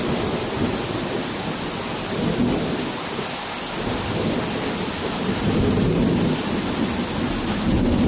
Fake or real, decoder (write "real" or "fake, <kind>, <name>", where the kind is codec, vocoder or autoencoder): real